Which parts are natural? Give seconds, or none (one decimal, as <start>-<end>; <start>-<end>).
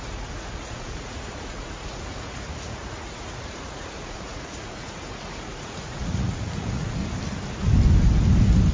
7.0-8.7